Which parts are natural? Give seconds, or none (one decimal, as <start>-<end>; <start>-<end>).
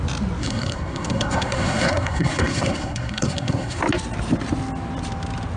0.0-0.4; 3.8-5.6